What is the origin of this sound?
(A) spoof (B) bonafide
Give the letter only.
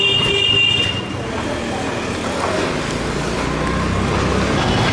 B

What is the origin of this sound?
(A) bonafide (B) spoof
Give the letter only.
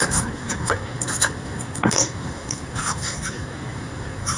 B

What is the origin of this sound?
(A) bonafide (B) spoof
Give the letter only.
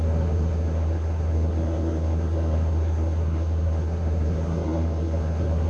B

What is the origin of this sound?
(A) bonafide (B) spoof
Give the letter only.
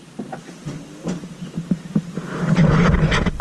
A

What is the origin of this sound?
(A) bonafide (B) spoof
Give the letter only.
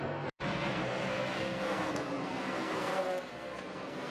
B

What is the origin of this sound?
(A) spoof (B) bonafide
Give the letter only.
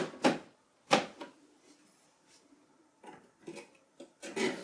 B